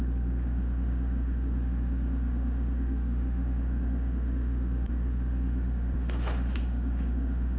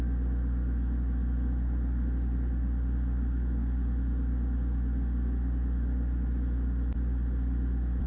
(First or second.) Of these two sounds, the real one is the second